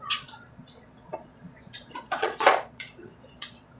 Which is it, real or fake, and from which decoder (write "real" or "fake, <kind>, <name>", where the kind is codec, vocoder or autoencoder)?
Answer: fake, vocoder, Vocos